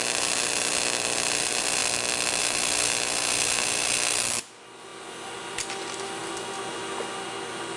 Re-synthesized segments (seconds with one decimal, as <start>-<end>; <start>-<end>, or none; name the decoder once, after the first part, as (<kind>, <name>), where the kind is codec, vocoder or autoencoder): none